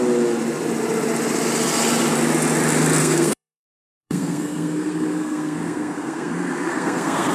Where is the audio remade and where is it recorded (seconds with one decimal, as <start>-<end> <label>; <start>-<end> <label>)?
0.0-3.0 recorded; 3.0-7.3 remade